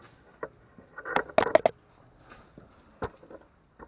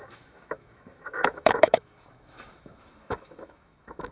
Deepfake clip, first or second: second